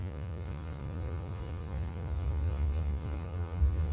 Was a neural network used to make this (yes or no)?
yes